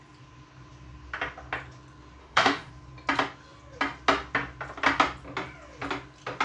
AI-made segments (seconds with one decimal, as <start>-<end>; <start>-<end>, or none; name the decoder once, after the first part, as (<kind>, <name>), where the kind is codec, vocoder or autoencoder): 2.2-2.7 (autoencoder, DAC-VAE)

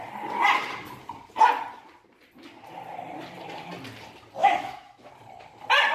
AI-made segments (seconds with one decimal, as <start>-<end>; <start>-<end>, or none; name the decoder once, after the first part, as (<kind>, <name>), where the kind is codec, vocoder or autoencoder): 4.4-5.1 (autoencoder, DAC-VAE)